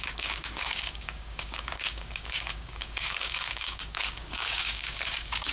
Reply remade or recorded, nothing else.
remade